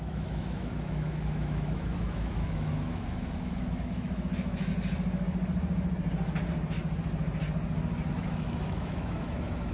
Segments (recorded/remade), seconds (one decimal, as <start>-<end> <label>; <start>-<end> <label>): 0.0-4.7 remade; 4.7-8.1 recorded; 8.1-9.7 remade

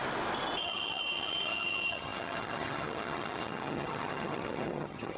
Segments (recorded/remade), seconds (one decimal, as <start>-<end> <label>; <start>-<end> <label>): 0.0-0.6 recorded; 0.6-5.2 remade

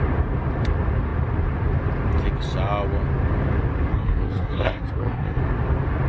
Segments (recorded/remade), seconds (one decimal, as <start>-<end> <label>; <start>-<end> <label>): 0.0-3.9 recorded; 3.9-5.4 remade; 5.4-6.1 recorded